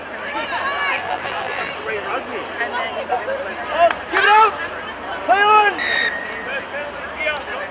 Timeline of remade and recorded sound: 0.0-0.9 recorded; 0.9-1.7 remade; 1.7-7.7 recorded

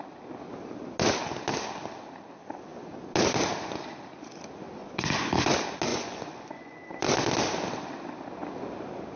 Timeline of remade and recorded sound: 0.0-4.8 recorded; 4.8-5.5 remade; 5.5-5.9 recorded; 5.9-7.0 remade; 7.0-9.2 recorded